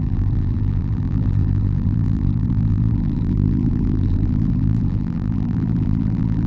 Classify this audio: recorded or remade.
remade